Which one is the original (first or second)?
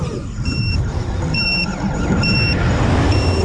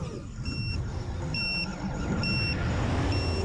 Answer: second